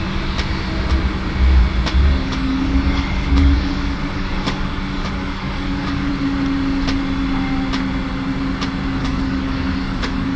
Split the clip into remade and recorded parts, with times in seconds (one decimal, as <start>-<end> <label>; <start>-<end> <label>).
0.0-2.2 recorded; 2.2-6.1 remade; 6.1-9.0 recorded; 9.0-10.4 remade